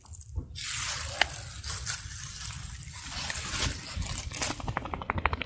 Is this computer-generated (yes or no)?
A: no